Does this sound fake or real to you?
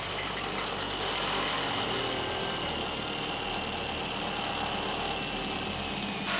real